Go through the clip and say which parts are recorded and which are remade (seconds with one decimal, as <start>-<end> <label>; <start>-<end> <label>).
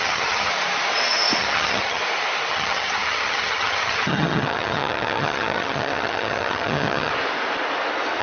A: 0.0-0.5 remade; 0.5-1.4 recorded; 1.4-2.0 remade; 2.0-2.5 recorded; 2.5-7.1 remade; 7.1-8.2 recorded